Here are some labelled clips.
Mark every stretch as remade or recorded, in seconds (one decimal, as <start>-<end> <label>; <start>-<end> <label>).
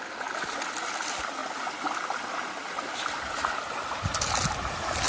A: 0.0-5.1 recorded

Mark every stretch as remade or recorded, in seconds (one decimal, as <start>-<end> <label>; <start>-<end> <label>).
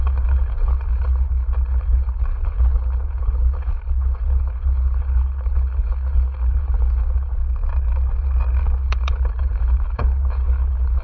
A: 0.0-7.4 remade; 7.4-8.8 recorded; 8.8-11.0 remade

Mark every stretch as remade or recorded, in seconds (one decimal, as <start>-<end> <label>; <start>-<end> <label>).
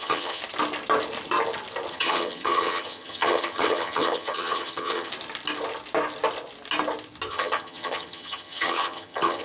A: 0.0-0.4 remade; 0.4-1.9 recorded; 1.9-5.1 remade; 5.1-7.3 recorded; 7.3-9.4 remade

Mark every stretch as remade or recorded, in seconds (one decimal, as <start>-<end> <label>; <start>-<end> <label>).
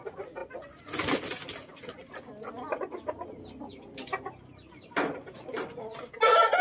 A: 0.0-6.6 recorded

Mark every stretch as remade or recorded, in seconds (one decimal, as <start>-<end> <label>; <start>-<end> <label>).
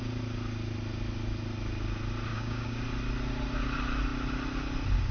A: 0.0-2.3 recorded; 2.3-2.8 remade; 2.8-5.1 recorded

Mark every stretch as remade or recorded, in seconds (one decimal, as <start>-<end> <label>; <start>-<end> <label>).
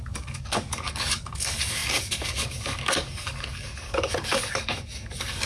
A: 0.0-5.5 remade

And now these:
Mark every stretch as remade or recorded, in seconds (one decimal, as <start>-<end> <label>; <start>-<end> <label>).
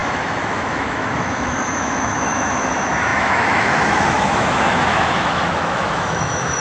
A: 0.0-6.6 remade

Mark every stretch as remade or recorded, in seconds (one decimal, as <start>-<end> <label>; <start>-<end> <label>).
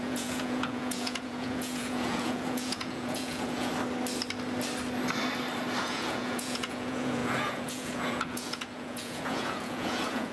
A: 0.0-3.7 remade; 3.7-5.8 recorded; 5.8-10.3 remade